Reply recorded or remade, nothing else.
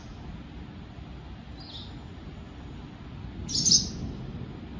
recorded